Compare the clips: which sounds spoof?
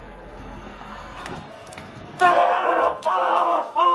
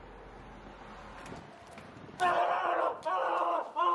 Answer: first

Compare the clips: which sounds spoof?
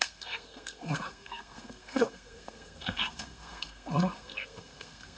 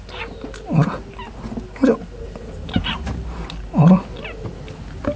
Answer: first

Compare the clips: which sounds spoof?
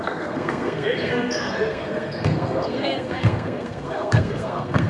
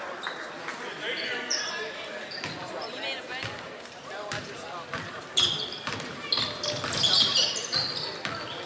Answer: first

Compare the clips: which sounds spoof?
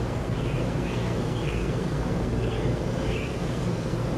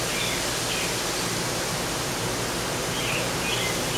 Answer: first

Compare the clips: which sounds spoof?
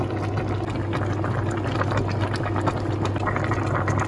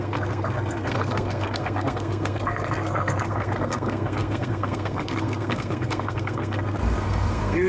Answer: second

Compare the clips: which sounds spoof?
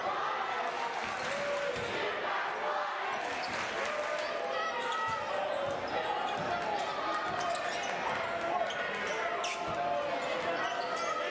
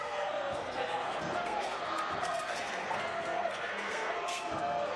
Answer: second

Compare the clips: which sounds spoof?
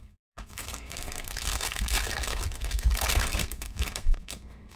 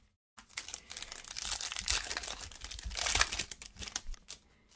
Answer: first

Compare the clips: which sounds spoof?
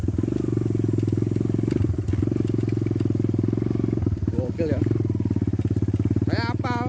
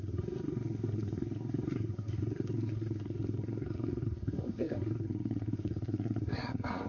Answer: second